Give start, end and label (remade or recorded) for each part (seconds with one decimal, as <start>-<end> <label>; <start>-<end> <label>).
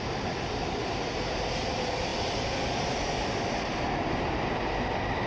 0.0-5.3 recorded